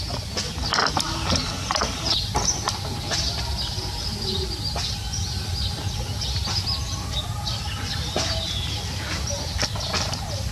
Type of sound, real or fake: real